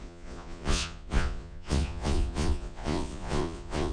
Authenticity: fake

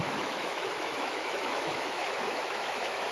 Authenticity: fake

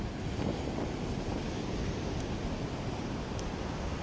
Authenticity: real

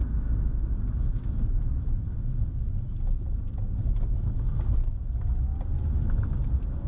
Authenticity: real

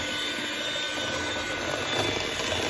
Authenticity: real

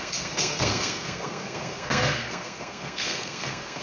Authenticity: fake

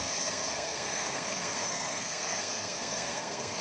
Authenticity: fake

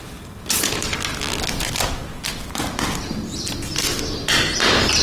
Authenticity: real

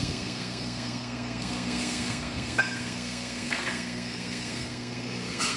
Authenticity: fake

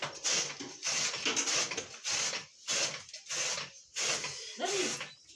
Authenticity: real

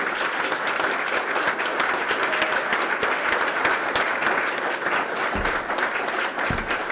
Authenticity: real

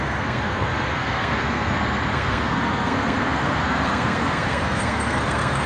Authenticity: fake